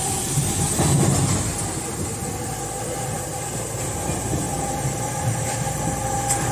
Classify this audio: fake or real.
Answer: real